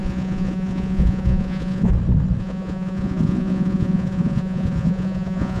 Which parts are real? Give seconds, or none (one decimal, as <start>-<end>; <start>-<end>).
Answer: 1.9-2.4